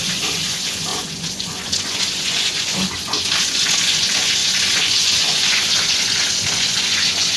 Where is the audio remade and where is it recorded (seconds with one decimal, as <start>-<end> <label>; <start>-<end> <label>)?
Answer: 0.0-7.4 remade